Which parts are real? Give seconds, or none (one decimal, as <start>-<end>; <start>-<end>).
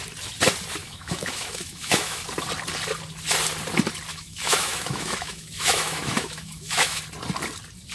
0.0-0.8; 2.2-4.1; 7.0-7.9